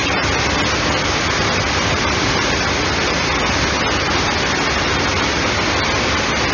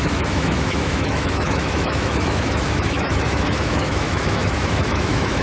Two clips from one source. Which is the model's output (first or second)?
second